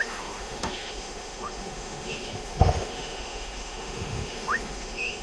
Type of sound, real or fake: fake